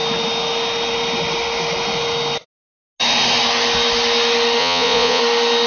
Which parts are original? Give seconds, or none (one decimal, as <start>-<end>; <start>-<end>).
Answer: 0.0-4.6; 5.2-5.7